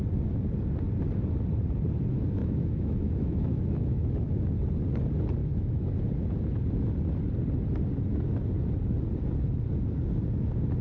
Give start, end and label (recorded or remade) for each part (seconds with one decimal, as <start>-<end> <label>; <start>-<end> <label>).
0.0-2.4 recorded; 2.4-4.3 remade; 4.3-5.4 recorded; 5.4-5.9 remade; 5.9-10.8 recorded